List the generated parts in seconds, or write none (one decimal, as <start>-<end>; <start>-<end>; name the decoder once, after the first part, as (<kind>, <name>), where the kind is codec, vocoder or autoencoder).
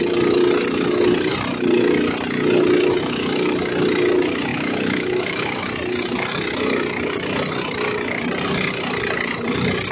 4.5-5.6 (autoencoder, DAC-VAE)